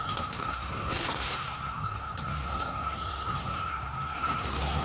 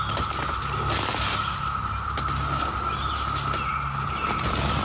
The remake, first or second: first